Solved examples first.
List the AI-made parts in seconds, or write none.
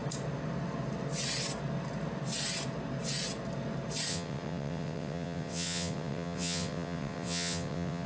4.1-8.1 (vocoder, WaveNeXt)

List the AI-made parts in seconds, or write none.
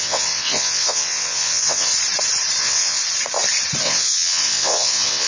0.0-1.9 (vocoder, WaveNeXt); 2.6-3.0; 3.8-5.3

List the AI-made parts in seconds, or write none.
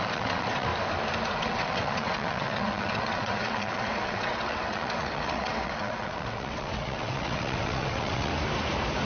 0.0-0.7 (vocoder, WaveNeXt); 1.4-8.3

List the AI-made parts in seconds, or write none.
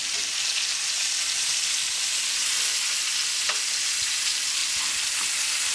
none